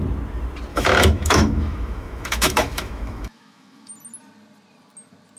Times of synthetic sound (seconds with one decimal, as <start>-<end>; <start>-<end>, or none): 0.7-3.9

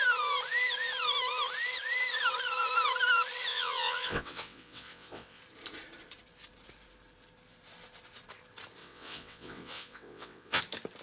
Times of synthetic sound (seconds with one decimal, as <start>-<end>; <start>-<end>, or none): 3.5-5.4; 8.8-10.6

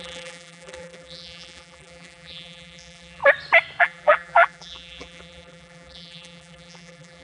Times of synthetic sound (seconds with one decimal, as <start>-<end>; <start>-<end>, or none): 0.0-3.2; 3.8-7.2

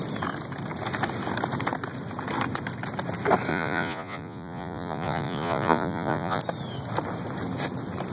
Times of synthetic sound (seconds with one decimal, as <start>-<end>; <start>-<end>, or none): 3.5-6.4